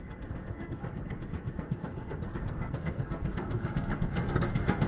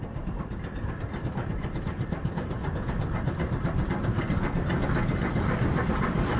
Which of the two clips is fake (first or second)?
first